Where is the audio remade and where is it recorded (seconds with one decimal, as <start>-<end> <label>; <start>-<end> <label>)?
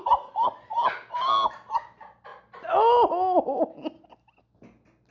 0.0-5.1 recorded